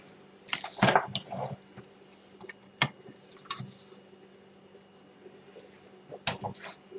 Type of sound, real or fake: real